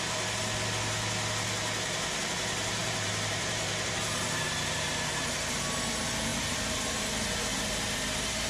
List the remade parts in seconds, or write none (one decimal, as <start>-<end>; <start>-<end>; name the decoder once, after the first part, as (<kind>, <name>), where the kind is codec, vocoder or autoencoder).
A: 2.8-4.8 (vocoder, BigVGAN v2); 6.3-7.1; 7.5-8.5